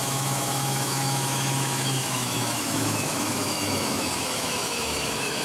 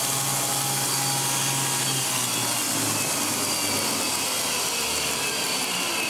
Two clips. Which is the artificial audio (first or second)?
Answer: first